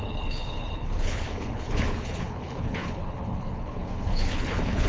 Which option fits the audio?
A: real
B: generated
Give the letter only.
B